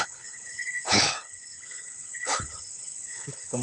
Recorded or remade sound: remade